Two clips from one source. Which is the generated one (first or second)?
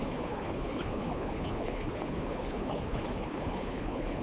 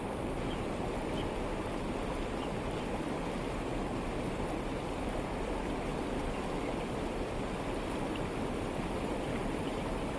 first